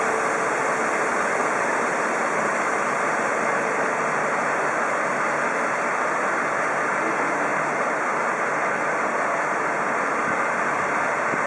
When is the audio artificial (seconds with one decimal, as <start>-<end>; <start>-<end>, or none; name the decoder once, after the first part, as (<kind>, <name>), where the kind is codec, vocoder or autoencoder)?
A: 1.1-3.7 (vocoder, BigVGAN v2); 7.5-8.5